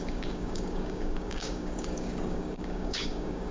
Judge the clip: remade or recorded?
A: remade